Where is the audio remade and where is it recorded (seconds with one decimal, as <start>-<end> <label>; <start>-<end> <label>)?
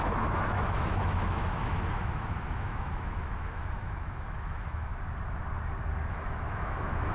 0.0-4.9 remade; 4.9-6.1 recorded; 6.1-7.1 remade